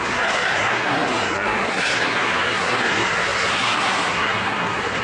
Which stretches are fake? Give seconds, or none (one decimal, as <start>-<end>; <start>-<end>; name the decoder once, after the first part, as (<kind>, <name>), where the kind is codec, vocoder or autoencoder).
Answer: 0.0-5.0 (codec, SNAC)